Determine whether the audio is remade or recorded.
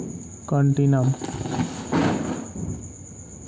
recorded